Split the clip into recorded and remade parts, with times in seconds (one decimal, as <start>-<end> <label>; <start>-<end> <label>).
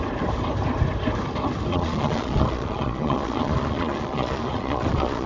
0.0-1.7 recorded; 1.7-5.3 remade